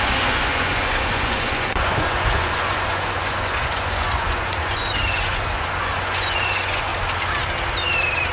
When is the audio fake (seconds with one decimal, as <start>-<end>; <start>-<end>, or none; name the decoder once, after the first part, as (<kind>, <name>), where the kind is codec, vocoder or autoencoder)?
0.0-6.9 (vocoder, Vocos)